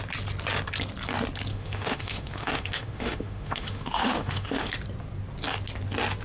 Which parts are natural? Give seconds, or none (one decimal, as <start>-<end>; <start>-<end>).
0.0-1.5; 4.7-6.2